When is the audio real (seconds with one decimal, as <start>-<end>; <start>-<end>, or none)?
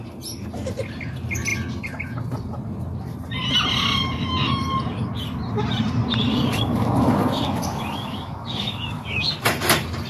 0.0-6.3; 9.3-10.1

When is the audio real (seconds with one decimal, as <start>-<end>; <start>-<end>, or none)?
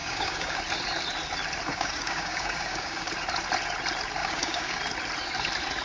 0.6-1.7; 3.1-4.2; 4.8-5.8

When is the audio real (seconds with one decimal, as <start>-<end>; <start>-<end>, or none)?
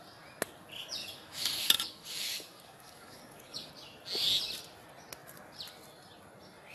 0.0-1.0; 3.7-6.7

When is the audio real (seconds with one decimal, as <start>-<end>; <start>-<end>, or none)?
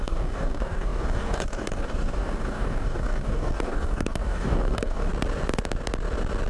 5.1-6.5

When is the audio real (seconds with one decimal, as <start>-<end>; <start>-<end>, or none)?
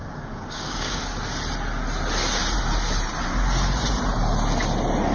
1.0-5.1